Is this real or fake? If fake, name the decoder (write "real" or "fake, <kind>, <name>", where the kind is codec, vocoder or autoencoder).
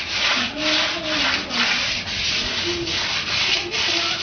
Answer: real